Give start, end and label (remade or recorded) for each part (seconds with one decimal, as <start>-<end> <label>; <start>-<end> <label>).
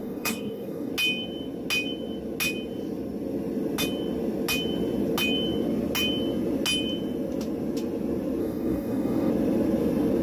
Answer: 0.0-0.9 remade; 0.9-8.4 recorded; 8.4-9.3 remade; 9.3-10.2 recorded